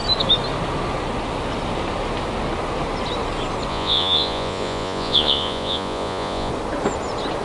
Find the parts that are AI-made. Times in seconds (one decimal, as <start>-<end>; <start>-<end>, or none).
3.7-6.5